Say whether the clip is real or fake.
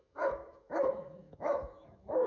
fake